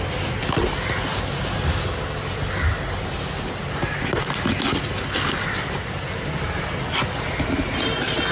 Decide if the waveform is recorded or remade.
recorded